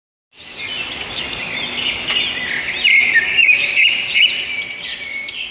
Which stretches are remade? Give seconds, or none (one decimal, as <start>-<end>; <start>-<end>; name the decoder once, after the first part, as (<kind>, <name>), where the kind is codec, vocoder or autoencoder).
3.4-4.1 (codec, DAC)